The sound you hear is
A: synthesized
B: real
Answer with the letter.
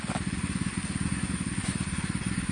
B